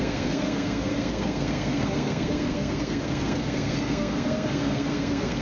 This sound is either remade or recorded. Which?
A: remade